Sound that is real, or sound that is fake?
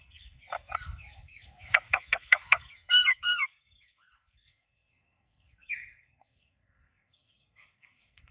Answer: fake